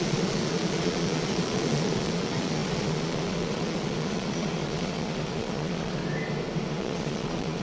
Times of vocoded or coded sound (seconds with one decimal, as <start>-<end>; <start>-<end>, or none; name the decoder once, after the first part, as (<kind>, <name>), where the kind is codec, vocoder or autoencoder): 0.0-6.0 (vocoder, Vocos); 6.7-7.6